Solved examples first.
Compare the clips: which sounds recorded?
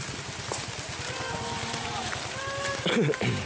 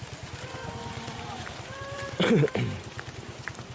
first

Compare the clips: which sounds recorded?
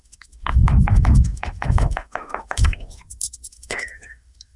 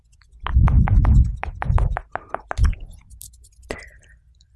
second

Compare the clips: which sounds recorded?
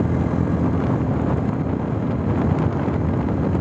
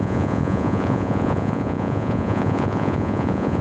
first